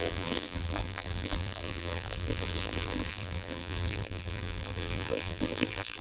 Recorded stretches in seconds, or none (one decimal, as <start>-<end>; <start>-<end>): none